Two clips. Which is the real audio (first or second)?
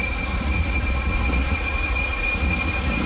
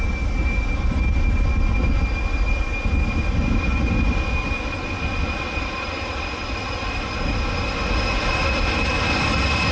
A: second